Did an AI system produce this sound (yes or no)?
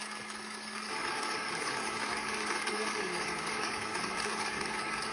yes